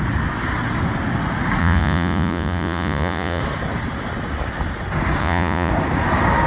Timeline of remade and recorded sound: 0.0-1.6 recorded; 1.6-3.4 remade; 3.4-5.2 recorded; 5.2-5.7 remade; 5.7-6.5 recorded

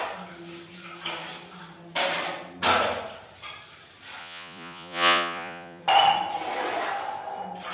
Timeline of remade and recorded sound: 0.0-4.2 recorded; 4.2-5.8 remade; 5.8-7.7 recorded

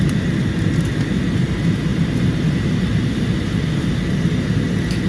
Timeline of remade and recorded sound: 0.0-5.1 recorded

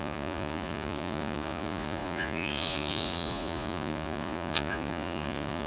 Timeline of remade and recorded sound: 0.0-5.7 remade

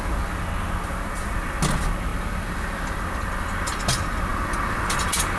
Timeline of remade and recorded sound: 0.0-5.4 recorded